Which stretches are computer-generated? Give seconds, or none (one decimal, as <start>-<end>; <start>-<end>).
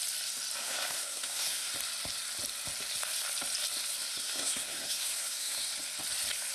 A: 0.6-1.7; 4.1-5.7